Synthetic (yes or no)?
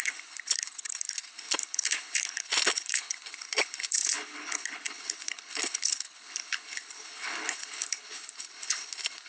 yes